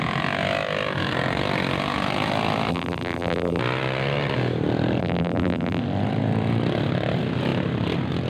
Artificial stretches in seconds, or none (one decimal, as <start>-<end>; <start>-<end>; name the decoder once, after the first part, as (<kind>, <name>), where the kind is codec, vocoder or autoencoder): 2.7-3.6 (vocoder, BigVGAN v2); 5.0-5.8